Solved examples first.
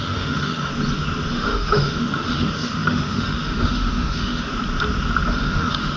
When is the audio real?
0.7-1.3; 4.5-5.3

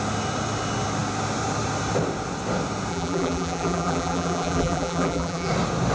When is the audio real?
0.0-2.9; 5.5-5.9

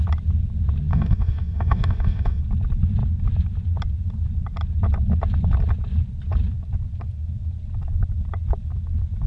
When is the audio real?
0.0-0.9; 2.4-9.3

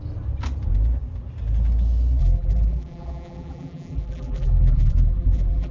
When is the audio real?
0.0-2.2